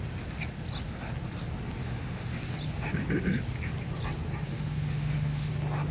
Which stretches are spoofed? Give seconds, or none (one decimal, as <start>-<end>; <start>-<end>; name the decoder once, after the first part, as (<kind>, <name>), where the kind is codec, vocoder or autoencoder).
1.8-2.4 (autoencoder, DAC-VAE); 4.5-5.5